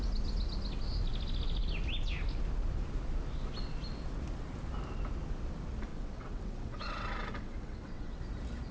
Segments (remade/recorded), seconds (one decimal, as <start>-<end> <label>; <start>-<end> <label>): 0.0-5.9 recorded; 5.9-8.2 remade; 8.2-8.7 recorded